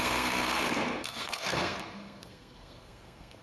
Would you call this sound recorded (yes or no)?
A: no